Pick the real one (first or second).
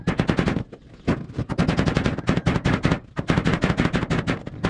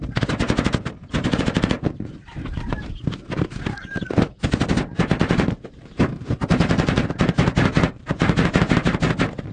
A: first